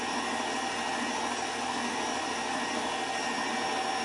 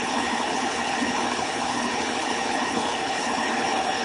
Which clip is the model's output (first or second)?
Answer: second